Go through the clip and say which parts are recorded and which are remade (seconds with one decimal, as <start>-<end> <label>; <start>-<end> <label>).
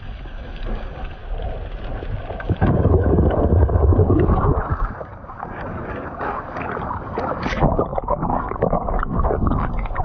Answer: 0.0-1.2 remade; 1.2-2.4 recorded; 2.4-10.0 remade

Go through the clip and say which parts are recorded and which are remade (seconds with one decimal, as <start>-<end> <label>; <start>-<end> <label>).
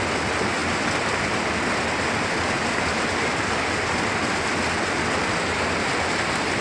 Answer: 0.0-6.6 recorded